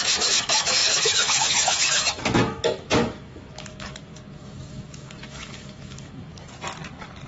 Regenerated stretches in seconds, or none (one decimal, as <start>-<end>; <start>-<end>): 0.0-4.1; 4.7-6.3